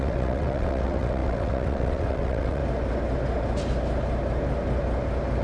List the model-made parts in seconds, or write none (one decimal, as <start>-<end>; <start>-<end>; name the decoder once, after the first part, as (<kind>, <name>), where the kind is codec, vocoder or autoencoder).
0.0-2.6 (vocoder, WaveNeXt)